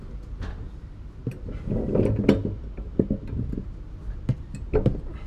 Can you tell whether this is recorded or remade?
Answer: recorded